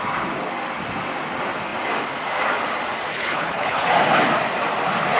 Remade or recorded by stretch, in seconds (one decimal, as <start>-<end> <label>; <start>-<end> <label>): 0.0-3.1 recorded; 3.1-3.9 remade; 3.9-5.2 recorded